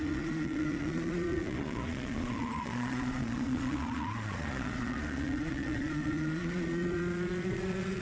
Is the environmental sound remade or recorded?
remade